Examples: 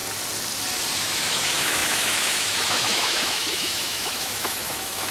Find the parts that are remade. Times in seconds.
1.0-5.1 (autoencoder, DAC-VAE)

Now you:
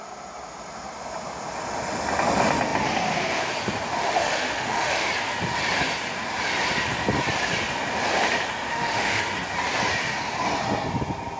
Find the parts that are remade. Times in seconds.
4.0-5.1 (autoencoder, DAC-VAE); 8.7-9.2

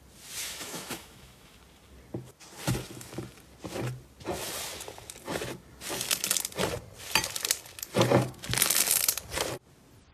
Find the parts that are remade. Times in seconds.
0.4-1.6 (autoencoder, DAC-VAE)

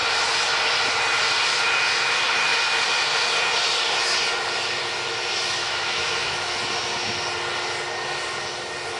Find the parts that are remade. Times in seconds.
5.6-6.6 (autoencoder, DAC-VAE)

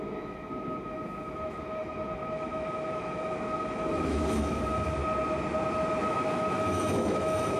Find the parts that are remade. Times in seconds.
0.0-5.0 (autoencoder, DAC-VAE); 6.0-7.6